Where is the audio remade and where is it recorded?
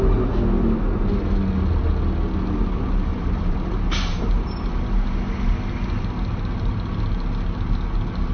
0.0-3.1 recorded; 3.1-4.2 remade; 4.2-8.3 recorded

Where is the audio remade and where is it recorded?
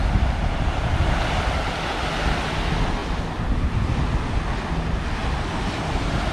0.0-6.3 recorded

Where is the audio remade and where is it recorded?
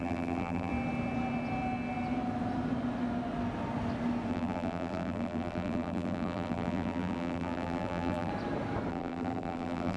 0.0-0.7 remade; 0.7-4.3 recorded; 4.3-8.3 remade; 8.3-8.9 recorded; 8.9-10.0 remade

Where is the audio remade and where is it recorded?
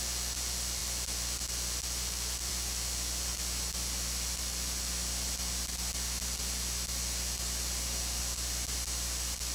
0.0-9.5 recorded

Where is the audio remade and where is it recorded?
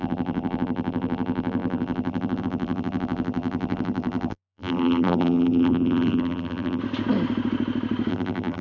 0.0-6.8 remade; 6.8-8.1 recorded; 8.1-8.6 remade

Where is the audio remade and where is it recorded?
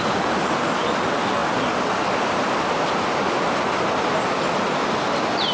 0.0-5.5 recorded